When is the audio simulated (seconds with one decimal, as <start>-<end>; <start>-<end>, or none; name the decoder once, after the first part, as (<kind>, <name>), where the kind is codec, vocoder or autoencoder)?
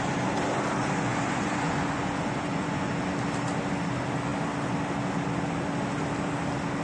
0.8-2.9 (vocoder, Vocos)